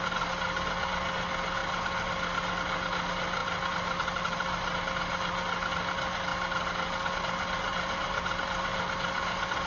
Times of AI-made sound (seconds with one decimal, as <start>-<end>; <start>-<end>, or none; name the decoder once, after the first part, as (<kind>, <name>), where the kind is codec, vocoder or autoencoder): none